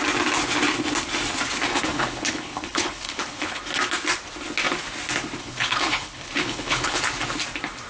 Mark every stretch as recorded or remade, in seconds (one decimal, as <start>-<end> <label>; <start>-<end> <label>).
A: 0.0-1.7 recorded; 1.7-3.6 remade; 3.6-5.4 recorded; 5.4-7.0 remade; 7.0-7.9 recorded